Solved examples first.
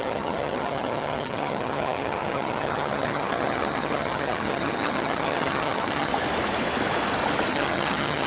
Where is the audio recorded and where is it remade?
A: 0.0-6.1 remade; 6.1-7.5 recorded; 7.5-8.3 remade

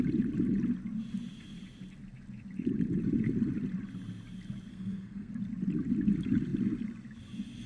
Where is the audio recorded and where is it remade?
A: 0.0-4.7 recorded; 4.7-5.3 remade; 5.3-7.7 recorded

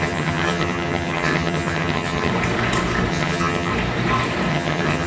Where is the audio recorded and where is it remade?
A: 0.0-2.3 remade; 2.3-3.1 recorded; 3.1-3.7 remade; 3.7-4.5 recorded; 4.5-5.1 remade

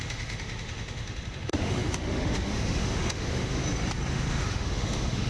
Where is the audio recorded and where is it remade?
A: 0.0-3.6 remade; 3.6-4.1 recorded; 4.1-5.3 remade

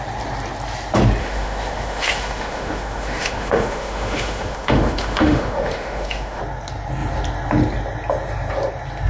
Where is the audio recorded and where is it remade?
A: 0.0-1.2 recorded; 1.2-6.4 remade; 6.4-9.1 recorded

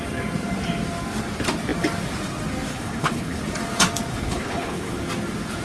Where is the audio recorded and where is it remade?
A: 0.0-2.7 recorded; 2.7-3.4 remade; 3.4-4.1 recorded; 4.1-5.0 remade; 5.0-5.6 recorded